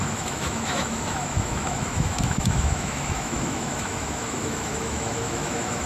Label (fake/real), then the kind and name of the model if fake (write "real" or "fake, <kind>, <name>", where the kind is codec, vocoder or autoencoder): fake, autoencoder, DAC-VAE